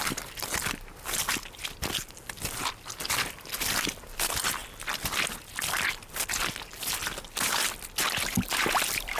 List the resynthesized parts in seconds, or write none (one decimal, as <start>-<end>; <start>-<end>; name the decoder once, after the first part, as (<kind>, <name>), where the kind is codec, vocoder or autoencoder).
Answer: none